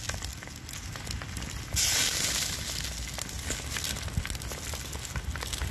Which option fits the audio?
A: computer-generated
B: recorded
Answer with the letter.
B